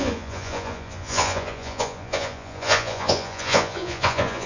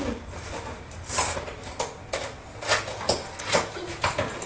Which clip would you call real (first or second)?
second